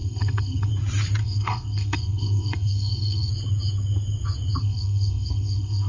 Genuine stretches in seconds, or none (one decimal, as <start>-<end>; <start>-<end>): 0.7-1.2; 3.3-4.6